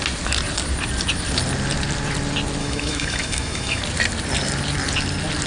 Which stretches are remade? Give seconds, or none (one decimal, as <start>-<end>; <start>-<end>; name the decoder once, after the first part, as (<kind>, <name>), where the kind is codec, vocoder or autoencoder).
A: 2.6-3.8 (autoencoder, DAC-VAE)